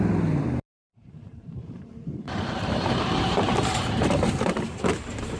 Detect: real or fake fake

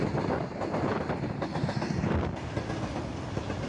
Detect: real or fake real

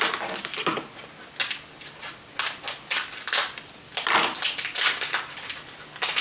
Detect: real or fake real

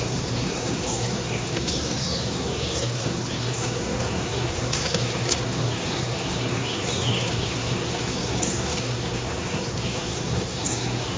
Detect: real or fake fake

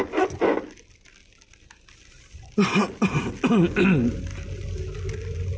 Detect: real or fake real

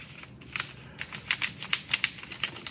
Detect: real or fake real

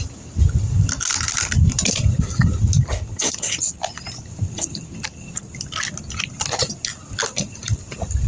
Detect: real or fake real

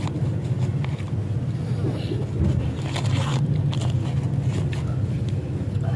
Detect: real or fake real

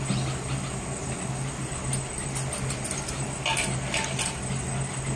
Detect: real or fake real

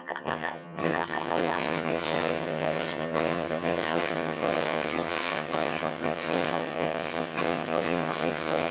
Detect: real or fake fake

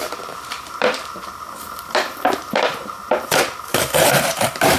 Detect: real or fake fake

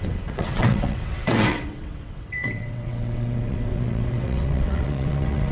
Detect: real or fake fake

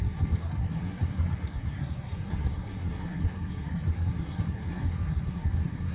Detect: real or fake fake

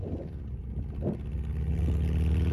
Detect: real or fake real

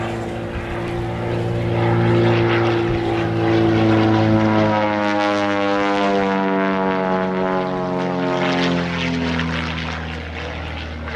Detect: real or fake real